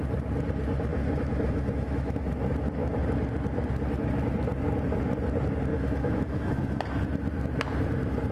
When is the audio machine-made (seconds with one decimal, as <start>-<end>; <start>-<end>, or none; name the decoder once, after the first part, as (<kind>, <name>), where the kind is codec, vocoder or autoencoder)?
0.9-2.3 (autoencoder, DAC-VAE); 5.7-6.8